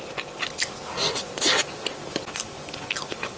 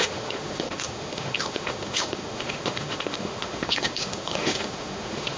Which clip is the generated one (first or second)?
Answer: second